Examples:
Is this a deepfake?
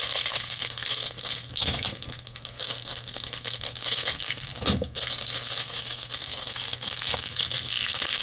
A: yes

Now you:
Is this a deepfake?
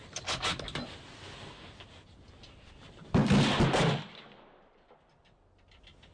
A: no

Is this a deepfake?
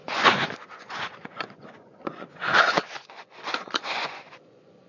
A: yes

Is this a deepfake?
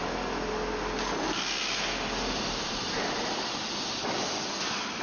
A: no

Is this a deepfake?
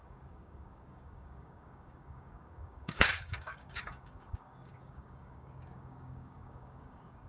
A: yes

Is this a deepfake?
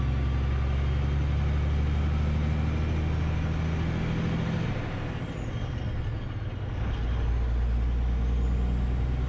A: no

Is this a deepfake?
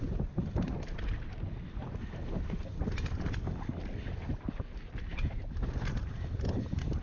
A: no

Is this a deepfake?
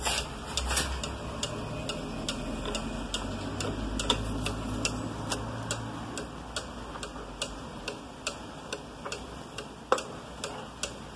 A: no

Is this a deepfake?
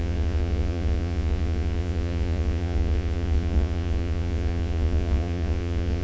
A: yes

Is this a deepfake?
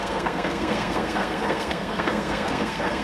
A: yes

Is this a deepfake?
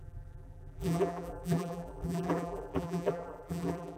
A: yes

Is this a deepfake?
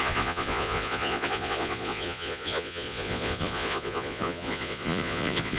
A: yes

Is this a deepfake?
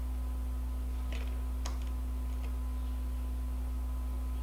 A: no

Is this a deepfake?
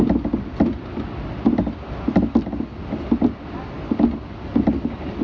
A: no